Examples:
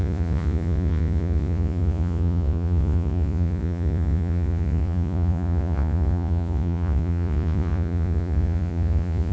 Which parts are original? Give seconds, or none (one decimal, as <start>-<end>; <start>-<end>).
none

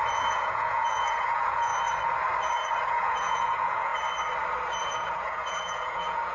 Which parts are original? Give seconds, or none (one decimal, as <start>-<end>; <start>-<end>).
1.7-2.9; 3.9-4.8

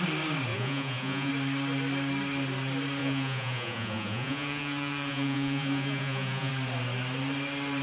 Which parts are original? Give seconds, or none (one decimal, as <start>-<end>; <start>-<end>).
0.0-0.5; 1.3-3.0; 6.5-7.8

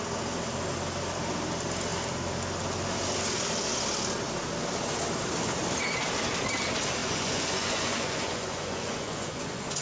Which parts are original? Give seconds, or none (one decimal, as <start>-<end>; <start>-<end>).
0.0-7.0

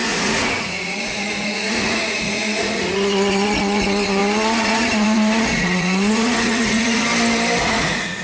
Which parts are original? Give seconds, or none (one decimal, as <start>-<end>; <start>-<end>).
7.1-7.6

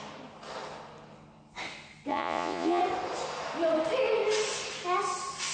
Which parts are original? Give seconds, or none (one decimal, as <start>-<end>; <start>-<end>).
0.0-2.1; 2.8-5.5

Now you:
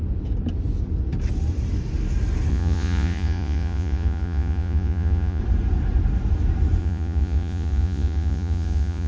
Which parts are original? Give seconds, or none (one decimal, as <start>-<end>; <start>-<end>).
0.0-2.5; 5.4-6.8